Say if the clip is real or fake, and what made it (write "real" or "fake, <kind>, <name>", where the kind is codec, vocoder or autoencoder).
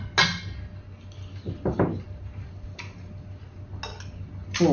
real